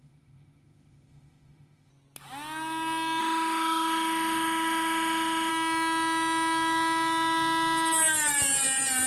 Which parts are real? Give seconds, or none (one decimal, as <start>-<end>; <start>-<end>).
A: 1.9-3.2; 5.5-9.1